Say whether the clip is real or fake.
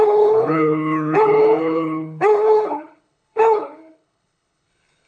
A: fake